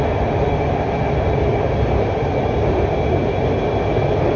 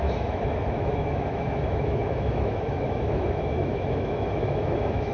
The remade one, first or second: second